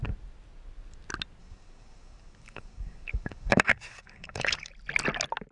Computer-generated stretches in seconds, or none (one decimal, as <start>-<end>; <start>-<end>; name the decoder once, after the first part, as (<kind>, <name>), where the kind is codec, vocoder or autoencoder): 1.4-4.7 (codec, DAC)